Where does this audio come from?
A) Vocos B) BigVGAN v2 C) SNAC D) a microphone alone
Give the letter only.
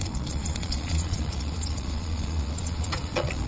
A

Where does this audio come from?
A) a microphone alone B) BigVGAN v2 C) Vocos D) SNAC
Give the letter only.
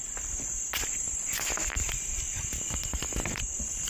A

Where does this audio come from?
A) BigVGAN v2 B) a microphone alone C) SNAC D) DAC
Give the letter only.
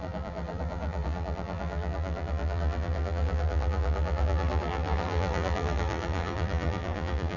A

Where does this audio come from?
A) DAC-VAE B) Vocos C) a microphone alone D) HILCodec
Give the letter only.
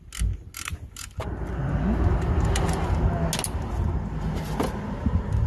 C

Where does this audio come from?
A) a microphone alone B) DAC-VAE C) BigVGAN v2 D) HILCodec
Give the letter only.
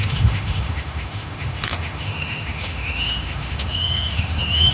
B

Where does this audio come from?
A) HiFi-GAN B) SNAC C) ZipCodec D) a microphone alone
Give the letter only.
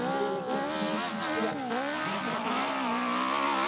D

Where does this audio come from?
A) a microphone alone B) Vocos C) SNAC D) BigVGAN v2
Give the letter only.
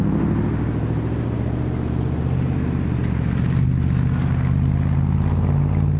A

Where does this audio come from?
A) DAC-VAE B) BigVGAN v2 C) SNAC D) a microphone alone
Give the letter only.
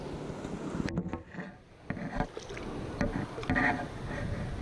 D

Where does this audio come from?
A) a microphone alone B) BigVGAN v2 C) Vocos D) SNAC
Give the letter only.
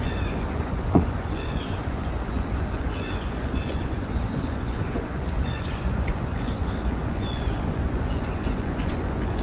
C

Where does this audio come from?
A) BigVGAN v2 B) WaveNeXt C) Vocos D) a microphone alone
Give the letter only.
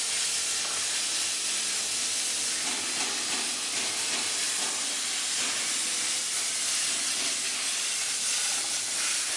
D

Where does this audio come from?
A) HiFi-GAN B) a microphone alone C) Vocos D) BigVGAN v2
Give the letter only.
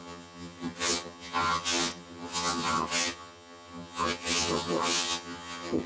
A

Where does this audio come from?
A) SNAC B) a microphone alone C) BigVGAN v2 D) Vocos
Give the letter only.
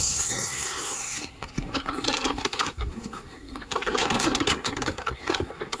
A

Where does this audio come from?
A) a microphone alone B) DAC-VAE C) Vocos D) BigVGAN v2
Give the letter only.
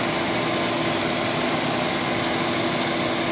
A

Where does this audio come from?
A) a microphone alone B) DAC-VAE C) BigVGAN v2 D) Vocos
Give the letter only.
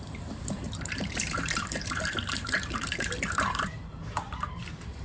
C